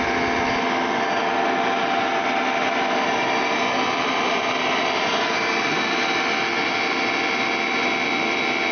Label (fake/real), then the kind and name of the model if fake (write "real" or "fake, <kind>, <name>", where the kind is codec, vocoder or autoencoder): real